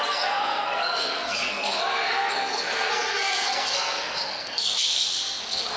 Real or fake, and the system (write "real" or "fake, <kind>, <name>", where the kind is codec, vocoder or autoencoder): fake, codec, SNAC